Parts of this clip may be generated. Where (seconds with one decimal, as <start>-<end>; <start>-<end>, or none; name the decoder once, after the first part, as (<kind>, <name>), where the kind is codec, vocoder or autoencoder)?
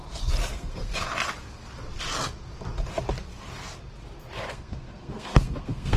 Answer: 0.5-0.9 (codec, SNAC); 4.5-6.0